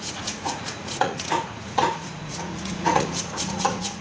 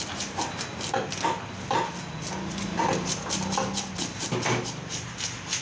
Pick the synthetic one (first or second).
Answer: first